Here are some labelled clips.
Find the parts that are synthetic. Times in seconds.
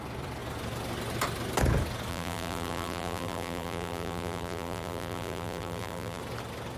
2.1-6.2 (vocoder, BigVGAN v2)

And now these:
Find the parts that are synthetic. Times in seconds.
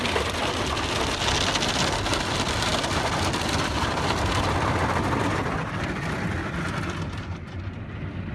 none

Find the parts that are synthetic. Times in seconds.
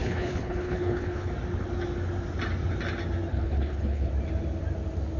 0.0-1.3 (codec, HILCodec); 3.3-4.1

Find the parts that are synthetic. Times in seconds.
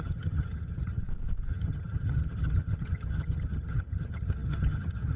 0.0-1.0 (vocoder, HiFi-GAN); 1.5-5.2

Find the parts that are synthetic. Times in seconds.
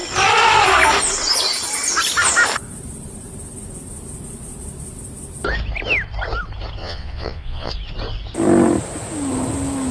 6.8-7.7 (vocoder, Vocos)